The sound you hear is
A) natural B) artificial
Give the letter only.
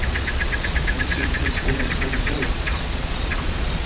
B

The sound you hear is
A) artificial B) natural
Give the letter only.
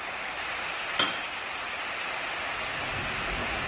B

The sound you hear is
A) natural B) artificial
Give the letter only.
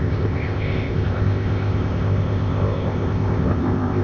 B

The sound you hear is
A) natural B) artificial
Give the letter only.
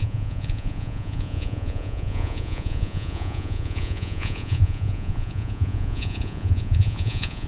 B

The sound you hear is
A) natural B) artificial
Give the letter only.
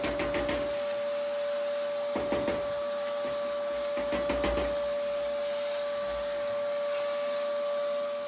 A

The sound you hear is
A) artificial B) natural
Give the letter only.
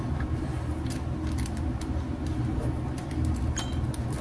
B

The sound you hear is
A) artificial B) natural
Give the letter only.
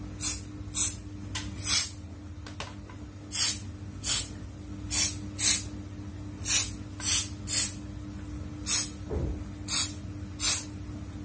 B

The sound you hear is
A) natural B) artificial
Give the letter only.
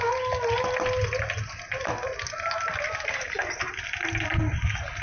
A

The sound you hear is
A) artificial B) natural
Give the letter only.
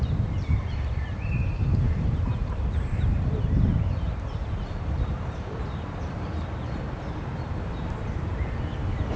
A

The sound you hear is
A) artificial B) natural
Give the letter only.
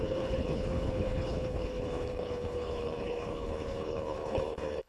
A